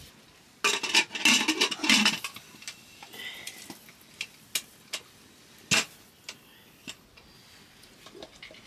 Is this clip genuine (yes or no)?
yes